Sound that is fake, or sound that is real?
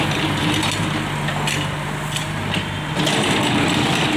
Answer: real